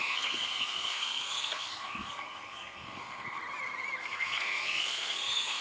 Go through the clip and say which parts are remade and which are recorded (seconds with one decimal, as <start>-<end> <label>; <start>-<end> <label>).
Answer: 0.0-3.4 remade; 3.4-4.0 recorded; 4.0-5.6 remade